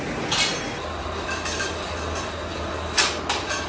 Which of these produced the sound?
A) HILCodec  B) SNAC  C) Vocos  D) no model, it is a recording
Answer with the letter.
D